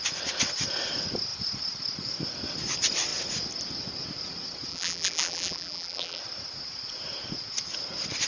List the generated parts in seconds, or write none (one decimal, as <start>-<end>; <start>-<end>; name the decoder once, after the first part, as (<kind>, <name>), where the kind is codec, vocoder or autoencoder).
4.7-6.2 (vocoder, BigVGAN v2)